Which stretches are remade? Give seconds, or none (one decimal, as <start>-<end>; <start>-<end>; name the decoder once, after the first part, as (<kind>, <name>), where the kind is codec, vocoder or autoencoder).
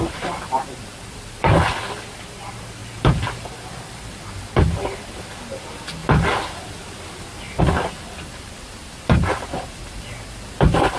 0.0-6.0 (vocoder, BigVGAN v2); 7.6-11.0